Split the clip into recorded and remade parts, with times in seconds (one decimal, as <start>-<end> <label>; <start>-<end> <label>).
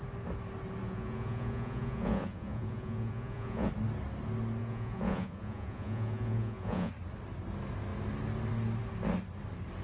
0.0-0.8 recorded; 0.8-3.7 remade; 3.7-4.6 recorded; 4.6-6.9 remade; 6.9-9.8 recorded